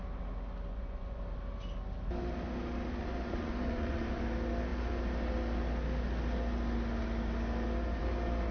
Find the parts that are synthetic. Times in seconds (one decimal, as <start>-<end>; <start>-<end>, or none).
0.7-1.2; 3.0-4.2